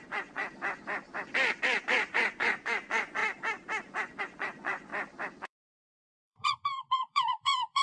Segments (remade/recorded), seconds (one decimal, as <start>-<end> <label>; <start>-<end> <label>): 0.0-0.4 remade; 0.4-1.8 recorded; 1.8-3.2 remade; 3.2-4.2 recorded; 4.2-4.9 remade; 4.9-5.4 recorded; 5.4-7.8 remade